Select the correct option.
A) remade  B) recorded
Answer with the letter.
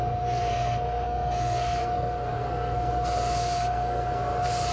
A